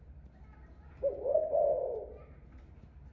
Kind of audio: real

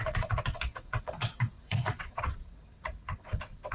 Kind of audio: fake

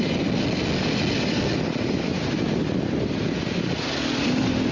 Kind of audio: real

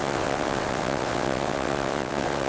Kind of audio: fake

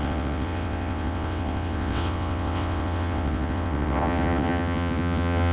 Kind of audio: fake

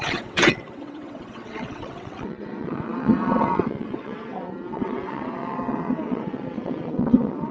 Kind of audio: fake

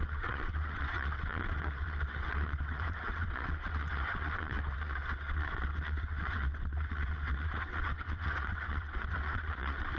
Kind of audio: fake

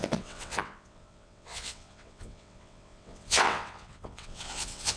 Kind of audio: fake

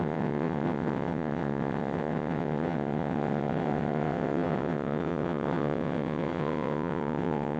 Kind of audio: fake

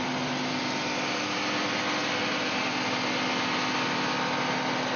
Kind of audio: real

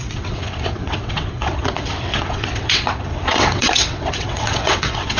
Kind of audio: fake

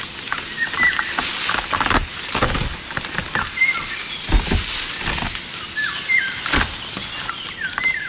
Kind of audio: real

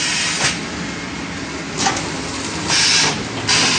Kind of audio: real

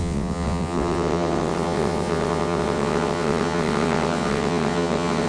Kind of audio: fake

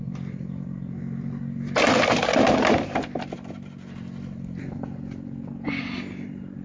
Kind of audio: real